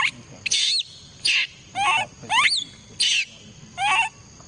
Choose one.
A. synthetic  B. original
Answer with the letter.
B